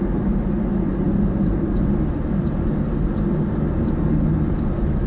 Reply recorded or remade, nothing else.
recorded